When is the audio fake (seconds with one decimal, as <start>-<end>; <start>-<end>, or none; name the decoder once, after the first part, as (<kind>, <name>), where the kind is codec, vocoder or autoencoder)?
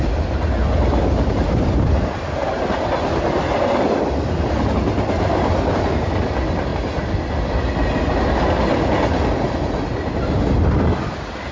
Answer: none